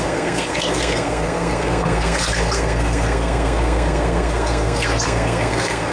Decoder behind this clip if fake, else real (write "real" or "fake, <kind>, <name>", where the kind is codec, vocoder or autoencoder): fake, codec, SNAC